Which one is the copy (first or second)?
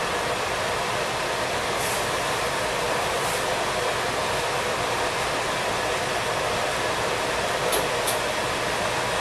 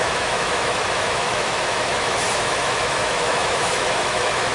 second